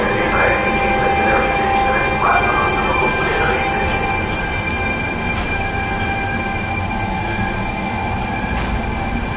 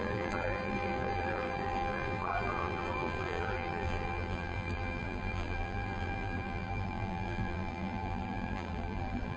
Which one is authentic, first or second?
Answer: first